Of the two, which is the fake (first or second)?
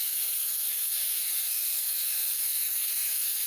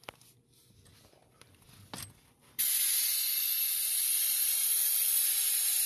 first